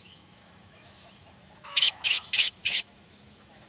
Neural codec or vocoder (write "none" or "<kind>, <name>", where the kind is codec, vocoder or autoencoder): autoencoder, DAC-VAE